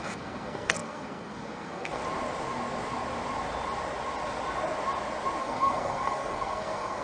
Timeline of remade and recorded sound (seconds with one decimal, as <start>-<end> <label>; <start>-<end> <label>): 0.0-2.0 remade; 2.0-5.4 recorded; 5.4-7.0 remade